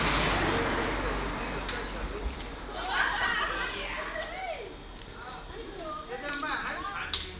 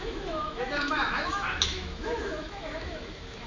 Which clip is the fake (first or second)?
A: second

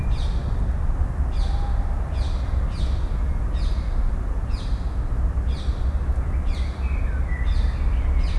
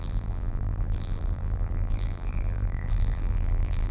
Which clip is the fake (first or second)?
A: second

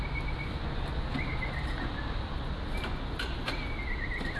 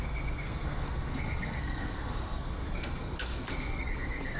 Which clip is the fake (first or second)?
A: second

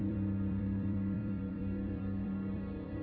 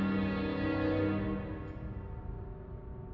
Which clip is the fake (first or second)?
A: first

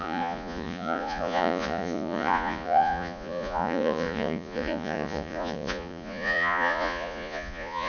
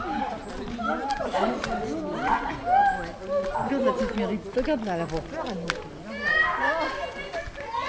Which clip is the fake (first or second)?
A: first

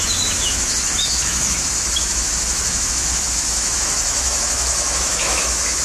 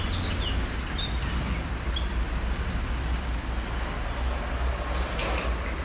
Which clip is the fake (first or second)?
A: first